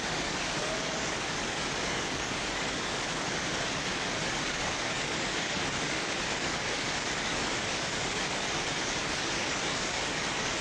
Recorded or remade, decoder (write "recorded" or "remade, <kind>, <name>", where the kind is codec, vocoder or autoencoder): remade, codec, DAC